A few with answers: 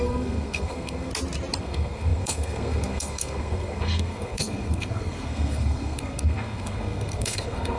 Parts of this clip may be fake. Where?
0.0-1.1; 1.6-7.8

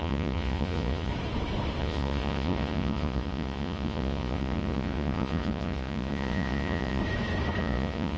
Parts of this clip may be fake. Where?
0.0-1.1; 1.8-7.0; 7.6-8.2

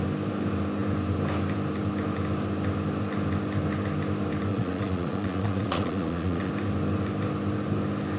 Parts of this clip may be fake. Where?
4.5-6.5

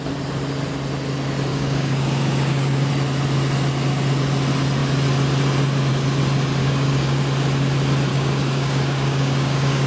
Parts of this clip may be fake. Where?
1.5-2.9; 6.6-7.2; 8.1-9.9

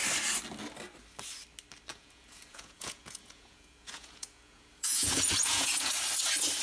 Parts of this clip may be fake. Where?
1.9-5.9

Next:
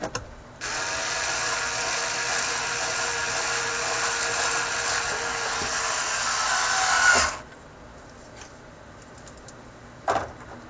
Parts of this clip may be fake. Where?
none